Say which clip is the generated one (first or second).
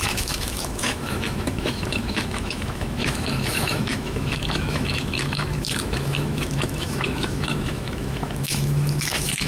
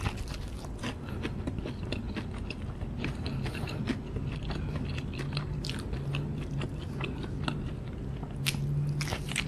first